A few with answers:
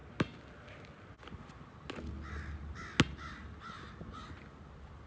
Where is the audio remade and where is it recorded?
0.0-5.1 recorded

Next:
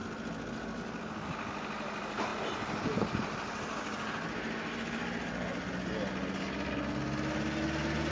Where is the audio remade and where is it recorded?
0.0-8.1 recorded